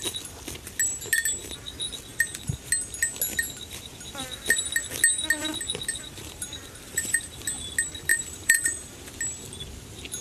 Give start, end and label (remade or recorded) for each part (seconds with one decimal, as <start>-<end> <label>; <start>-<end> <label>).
0.0-2.1 recorded; 2.1-2.7 remade; 2.7-5.9 recorded; 5.9-7.4 remade; 7.4-8.1 recorded; 8.1-9.1 remade; 9.1-10.2 recorded